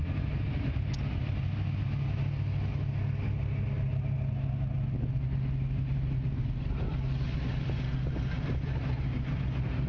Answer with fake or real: real